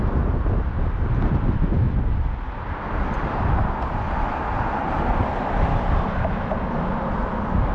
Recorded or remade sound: recorded